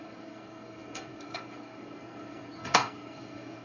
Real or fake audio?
fake